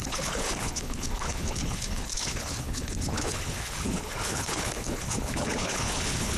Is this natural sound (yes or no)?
no